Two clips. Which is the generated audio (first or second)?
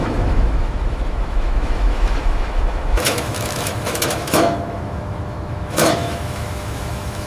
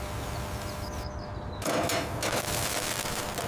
first